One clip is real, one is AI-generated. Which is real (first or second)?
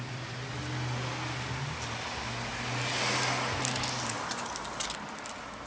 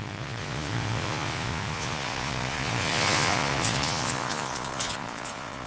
first